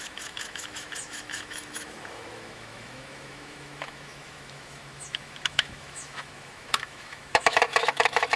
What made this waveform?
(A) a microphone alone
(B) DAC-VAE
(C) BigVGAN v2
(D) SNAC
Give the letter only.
B